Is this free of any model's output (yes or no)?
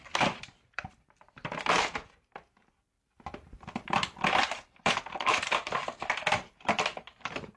no